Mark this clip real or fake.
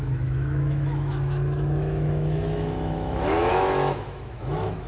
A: fake